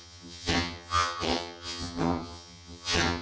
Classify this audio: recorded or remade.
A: remade